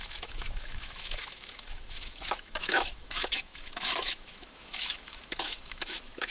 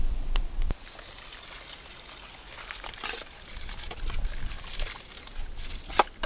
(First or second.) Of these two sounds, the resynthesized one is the first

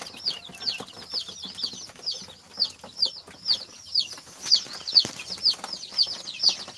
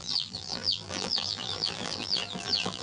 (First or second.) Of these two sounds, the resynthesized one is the second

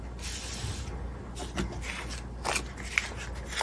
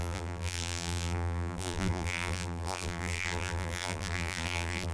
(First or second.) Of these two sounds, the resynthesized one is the second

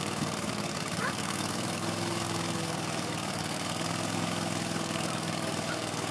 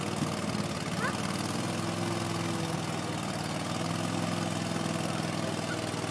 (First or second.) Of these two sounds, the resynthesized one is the first